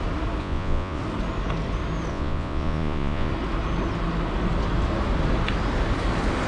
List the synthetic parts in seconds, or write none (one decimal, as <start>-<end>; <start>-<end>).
0.4-1.0; 2.1-3.3